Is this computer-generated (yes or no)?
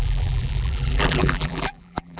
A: yes